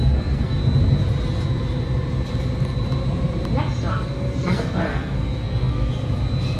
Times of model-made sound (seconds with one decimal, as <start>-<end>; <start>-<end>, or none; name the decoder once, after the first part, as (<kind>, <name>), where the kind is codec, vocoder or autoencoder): 0.0-0.6 (codec, SNAC); 3.9-5.9